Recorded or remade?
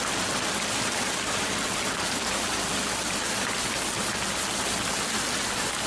recorded